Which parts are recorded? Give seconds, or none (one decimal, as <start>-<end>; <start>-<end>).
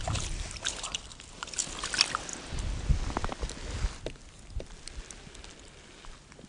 0.0-6.5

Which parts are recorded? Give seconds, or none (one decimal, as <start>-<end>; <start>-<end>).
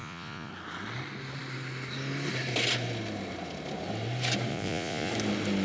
0.5-4.5; 5.1-5.6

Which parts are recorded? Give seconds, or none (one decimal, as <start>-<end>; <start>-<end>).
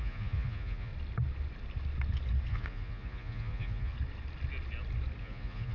0.9-2.5; 3.9-5.2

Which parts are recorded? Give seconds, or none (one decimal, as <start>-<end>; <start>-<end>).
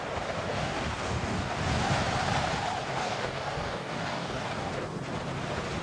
0.0-0.5; 1.6-3.0; 4.7-5.8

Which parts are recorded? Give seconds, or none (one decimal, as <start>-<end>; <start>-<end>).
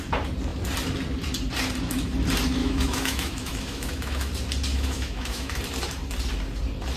0.0-2.6; 4.3-4.7; 5.6-7.0